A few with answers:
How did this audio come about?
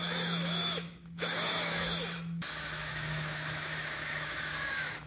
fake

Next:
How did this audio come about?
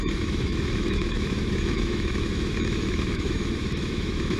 fake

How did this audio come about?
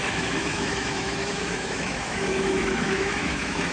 fake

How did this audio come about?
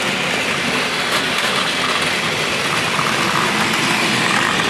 real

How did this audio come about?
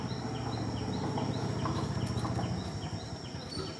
real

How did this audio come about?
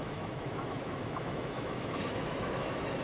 fake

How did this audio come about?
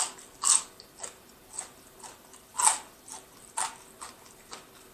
real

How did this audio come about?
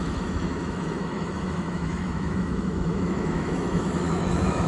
fake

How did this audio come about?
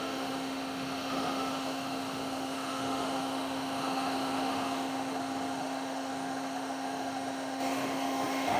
fake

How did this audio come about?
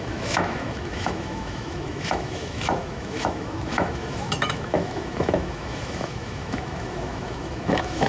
fake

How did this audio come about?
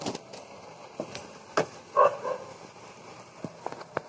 real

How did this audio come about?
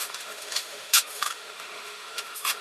fake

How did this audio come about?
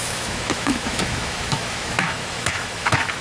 fake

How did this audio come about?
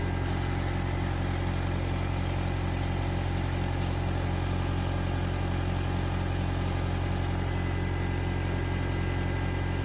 real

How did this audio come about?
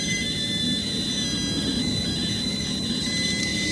real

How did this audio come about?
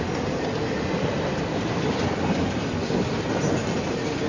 real